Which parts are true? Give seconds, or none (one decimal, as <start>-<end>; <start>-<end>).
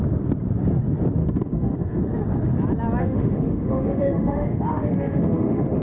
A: 0.0-1.2; 2.0-3.0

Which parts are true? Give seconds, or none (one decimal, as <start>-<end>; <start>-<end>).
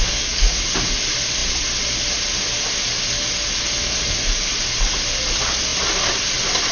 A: 0.6-6.7